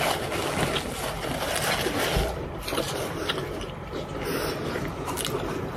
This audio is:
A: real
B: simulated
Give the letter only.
A